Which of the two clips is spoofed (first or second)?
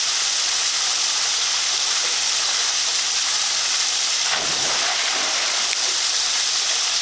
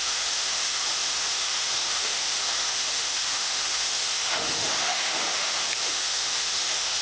second